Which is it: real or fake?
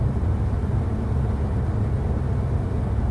real